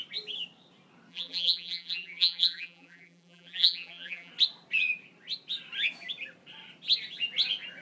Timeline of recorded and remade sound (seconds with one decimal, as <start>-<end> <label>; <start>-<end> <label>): 0.0-1.1 recorded; 1.1-4.3 remade; 4.3-7.8 recorded